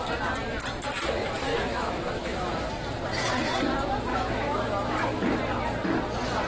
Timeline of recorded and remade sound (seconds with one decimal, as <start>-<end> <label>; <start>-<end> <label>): 0.0-1.5 recorded; 1.5-2.7 remade; 2.7-4.1 recorded; 4.1-5.4 remade; 5.4-6.5 recorded